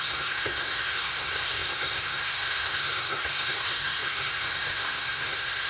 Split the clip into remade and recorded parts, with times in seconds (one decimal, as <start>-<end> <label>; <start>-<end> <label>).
0.0-5.7 remade

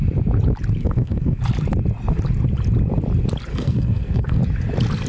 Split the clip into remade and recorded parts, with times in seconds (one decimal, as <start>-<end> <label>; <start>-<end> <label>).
0.0-0.8 recorded; 0.8-1.4 remade; 1.4-3.5 recorded; 3.5-4.4 remade; 4.4-5.1 recorded

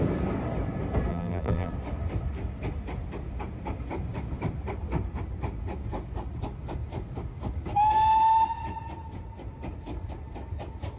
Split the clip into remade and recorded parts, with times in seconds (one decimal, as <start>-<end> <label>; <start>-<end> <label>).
0.0-1.1 recorded; 1.1-1.7 remade; 1.7-11.0 recorded

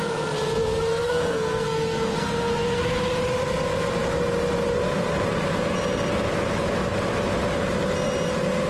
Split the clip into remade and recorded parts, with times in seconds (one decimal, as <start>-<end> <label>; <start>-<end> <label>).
0.0-0.9 recorded; 0.9-2.8 remade; 2.8-8.7 recorded

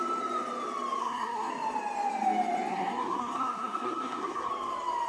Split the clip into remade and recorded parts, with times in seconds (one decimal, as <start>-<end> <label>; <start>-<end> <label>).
0.0-1.0 recorded; 1.0-1.5 remade; 1.5-2.7 recorded; 2.7-4.5 remade; 4.5-5.1 recorded

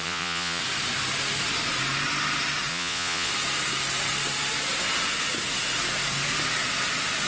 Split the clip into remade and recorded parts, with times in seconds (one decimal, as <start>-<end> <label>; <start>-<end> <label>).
0.0-0.6 remade; 0.6-2.7 recorded; 2.7-3.3 remade; 3.3-7.3 recorded